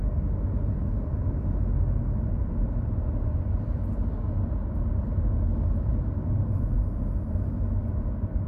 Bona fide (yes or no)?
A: yes